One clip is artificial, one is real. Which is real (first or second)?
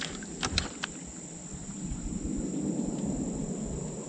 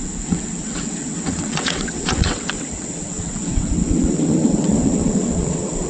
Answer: first